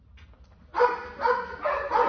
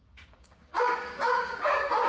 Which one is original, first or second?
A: first